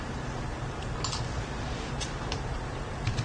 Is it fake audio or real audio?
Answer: fake